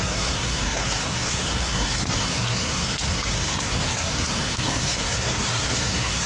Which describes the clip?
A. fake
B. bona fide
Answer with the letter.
A